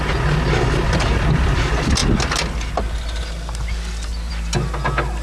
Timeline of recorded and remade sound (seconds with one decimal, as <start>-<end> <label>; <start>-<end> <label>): 0.0-5.2 recorded